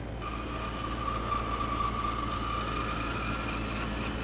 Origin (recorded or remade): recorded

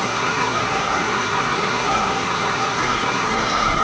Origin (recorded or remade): remade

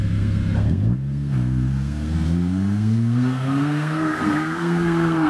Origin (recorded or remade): remade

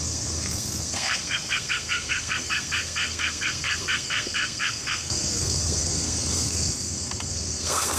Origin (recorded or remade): remade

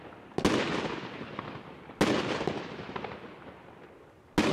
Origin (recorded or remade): recorded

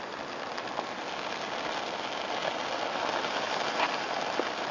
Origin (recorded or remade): recorded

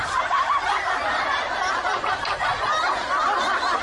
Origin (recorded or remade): recorded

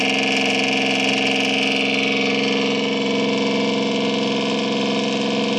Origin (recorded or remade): recorded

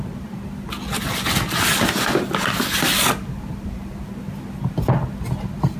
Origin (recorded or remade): recorded